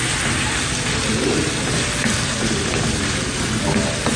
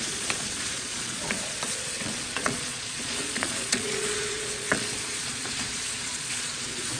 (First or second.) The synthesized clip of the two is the second